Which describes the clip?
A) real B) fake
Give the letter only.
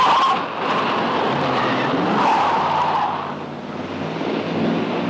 A